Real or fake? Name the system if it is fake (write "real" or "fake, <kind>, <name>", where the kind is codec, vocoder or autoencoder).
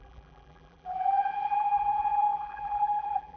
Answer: fake, vocoder, BigVGAN v2